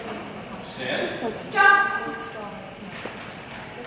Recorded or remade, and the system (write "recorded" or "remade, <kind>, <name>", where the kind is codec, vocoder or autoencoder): recorded